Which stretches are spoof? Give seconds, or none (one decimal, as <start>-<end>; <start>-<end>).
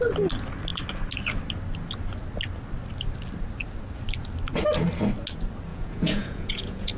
5.7-7.0